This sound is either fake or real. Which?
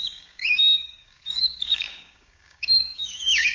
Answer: fake